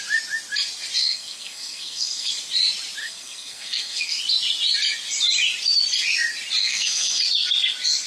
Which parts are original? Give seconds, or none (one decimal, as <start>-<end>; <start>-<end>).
0.0-1.0; 2.3-3.0; 4.2-6.6; 7.2-8.1